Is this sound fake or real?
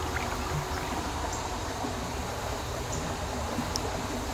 real